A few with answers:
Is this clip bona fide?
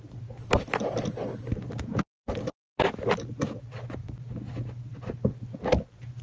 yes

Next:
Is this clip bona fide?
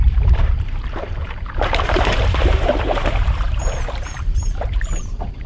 no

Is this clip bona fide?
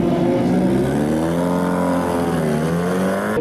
yes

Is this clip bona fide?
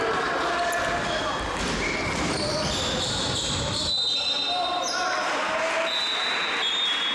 yes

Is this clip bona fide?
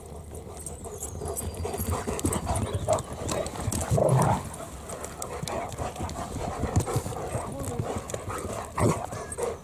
yes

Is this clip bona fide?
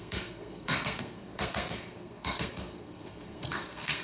no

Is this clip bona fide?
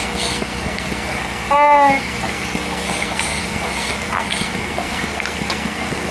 no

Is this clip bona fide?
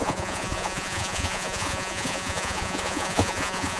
no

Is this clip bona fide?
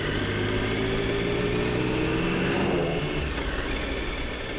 yes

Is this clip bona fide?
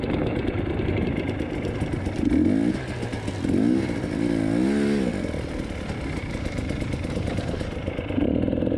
yes